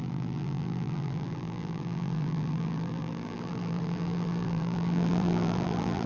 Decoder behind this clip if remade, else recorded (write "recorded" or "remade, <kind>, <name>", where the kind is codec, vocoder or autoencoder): remade, vocoder, BigVGAN v2